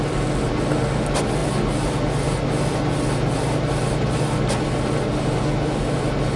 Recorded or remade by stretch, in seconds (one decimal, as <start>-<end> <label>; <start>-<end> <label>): 0.0-6.4 recorded